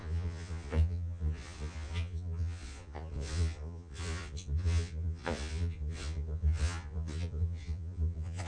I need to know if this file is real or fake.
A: fake